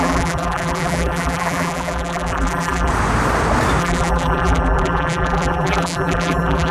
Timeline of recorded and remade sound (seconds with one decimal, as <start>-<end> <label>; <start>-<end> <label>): 0.0-2.9 remade; 2.9-3.8 recorded; 3.8-6.7 remade